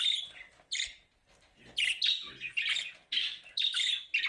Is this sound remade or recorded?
recorded